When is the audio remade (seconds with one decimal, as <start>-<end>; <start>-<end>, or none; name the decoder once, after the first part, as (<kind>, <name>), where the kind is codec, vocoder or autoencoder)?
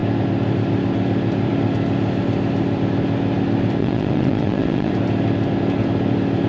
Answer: 3.8-4.9 (vocoder, WaveNeXt)